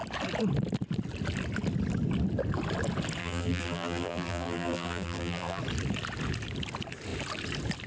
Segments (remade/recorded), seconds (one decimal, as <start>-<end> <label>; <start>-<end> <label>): 0.0-3.2 recorded; 3.2-5.6 remade; 5.6-7.9 recorded